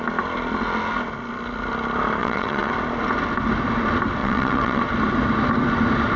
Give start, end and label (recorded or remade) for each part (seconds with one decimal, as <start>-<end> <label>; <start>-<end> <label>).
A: 0.0-2.2 recorded; 2.2-2.7 remade; 2.7-4.2 recorded; 4.2-4.8 remade; 4.8-6.2 recorded